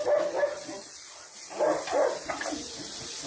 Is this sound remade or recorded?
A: recorded